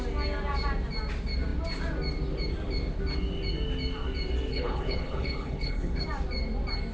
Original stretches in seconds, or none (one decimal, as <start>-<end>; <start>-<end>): 0.0-4.5; 6.0-6.9